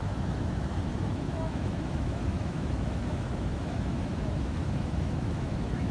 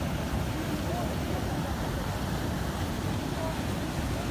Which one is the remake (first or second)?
first